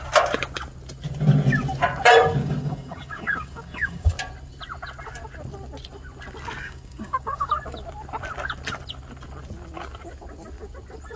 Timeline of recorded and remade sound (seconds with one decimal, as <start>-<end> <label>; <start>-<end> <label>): 0.0-2.4 recorded; 2.4-4.1 remade; 4.1-6.6 recorded; 6.6-7.5 remade; 7.5-11.2 recorded

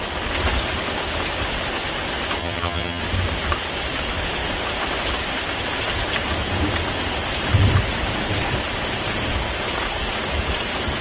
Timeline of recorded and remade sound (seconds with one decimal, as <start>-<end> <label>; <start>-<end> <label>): 0.0-2.4 recorded; 2.4-3.0 remade; 3.0-11.0 recorded

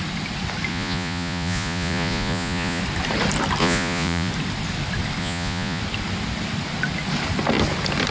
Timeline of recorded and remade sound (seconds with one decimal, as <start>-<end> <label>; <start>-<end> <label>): 0.0-0.7 recorded; 0.7-2.8 remade; 2.8-3.6 recorded; 3.6-4.3 remade; 4.3-5.2 recorded; 5.2-5.8 remade; 5.8-8.1 recorded

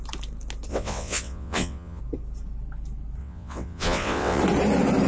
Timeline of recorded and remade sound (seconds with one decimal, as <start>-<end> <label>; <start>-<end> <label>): 0.0-0.7 recorded; 0.7-2.0 remade; 2.0-3.2 recorded; 3.2-4.4 remade; 4.4-5.1 recorded

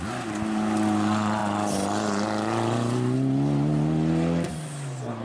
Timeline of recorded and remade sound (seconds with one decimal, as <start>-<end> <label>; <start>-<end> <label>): 0.0-5.2 recorded

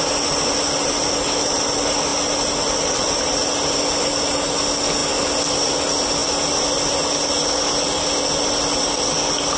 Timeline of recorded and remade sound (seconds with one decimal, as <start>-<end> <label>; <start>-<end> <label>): 0.0-9.6 recorded

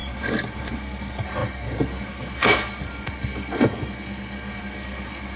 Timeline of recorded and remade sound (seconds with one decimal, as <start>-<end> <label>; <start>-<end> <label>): 0.0-5.4 remade

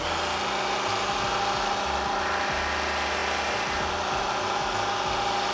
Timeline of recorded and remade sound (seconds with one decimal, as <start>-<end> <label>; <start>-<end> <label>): 0.0-5.5 recorded